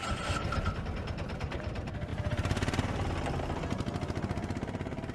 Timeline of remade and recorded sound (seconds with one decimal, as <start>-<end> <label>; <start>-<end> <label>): 0.0-2.1 recorded; 2.1-3.4 remade; 3.4-5.1 recorded